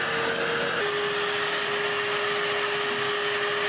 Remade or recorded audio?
recorded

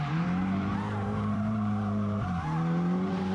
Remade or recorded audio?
remade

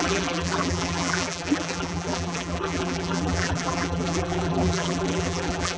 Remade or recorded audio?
remade